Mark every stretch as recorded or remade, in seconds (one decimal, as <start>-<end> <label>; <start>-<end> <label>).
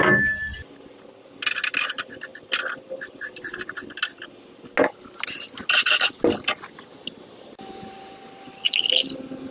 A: 0.0-9.5 recorded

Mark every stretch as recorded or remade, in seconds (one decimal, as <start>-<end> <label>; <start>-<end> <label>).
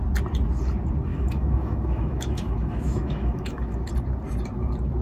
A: 0.0-1.1 recorded; 1.1-3.9 remade; 3.9-5.0 recorded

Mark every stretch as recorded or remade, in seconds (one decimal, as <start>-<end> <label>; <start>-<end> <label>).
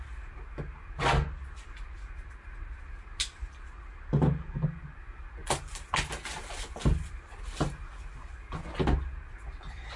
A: 0.0-10.0 recorded